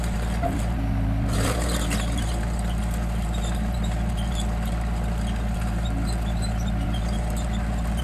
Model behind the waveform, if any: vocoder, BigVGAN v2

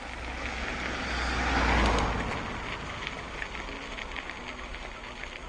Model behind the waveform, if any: none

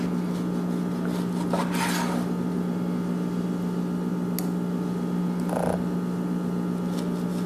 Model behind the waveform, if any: none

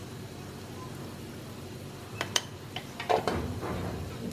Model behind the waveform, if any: none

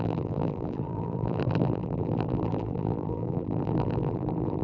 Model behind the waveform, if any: vocoder, BigVGAN v2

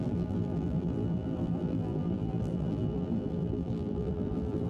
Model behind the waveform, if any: vocoder, BigVGAN v2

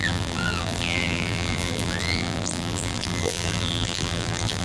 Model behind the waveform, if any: vocoder, BigVGAN v2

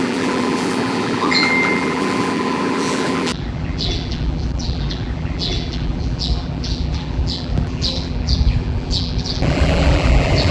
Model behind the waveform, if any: vocoder, BigVGAN v2